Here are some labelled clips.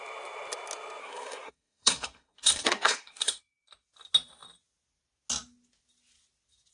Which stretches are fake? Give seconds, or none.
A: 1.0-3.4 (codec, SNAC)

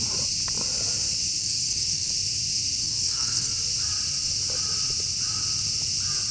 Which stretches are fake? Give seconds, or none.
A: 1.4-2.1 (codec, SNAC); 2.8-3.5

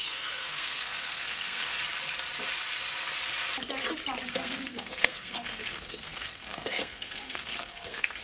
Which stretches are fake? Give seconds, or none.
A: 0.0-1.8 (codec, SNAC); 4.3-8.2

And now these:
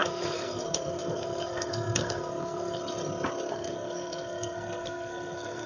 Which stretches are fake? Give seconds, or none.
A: 0.0-2.8 (codec, SNAC); 3.5-5.7

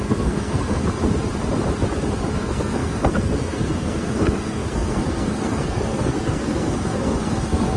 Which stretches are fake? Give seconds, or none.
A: 0.0-0.8 (codec, SNAC); 2.3-7.8

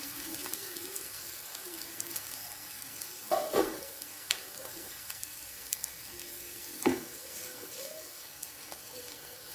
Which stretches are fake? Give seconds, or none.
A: 0.0-9.5 (codec, SNAC)

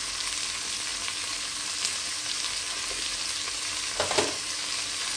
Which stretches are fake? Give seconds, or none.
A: none